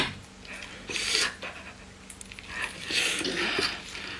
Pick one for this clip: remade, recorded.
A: recorded